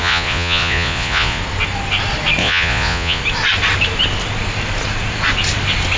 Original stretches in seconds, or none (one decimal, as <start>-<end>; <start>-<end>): 1.4-2.4; 3.2-6.0